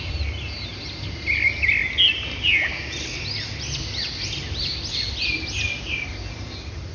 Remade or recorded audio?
recorded